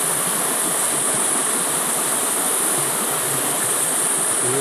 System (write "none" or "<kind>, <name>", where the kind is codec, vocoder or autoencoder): none